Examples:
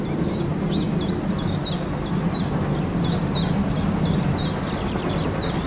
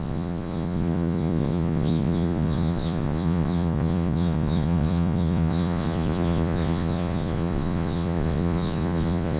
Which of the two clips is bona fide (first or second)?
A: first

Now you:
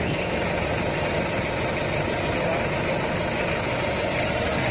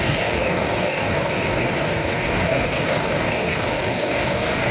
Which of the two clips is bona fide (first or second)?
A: first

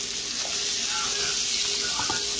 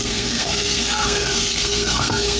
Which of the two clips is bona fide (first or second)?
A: first